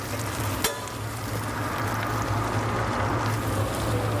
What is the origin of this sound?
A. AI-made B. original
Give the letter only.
B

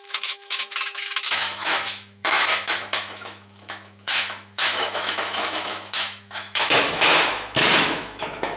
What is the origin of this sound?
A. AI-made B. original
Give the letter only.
A